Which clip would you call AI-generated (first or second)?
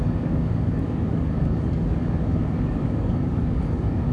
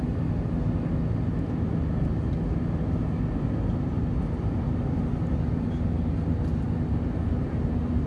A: first